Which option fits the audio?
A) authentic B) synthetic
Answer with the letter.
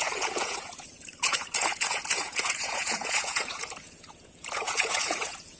B